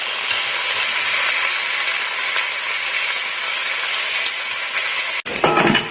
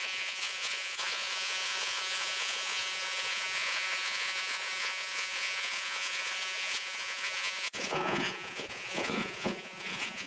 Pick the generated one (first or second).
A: second